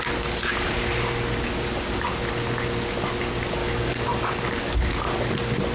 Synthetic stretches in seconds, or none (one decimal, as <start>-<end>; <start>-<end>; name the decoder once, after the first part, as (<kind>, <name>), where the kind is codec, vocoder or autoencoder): 3.6-4.8 (codec, DAC)